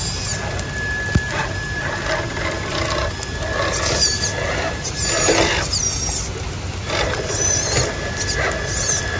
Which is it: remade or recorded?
recorded